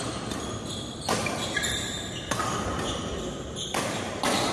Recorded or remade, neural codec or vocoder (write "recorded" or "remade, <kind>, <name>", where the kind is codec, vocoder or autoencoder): recorded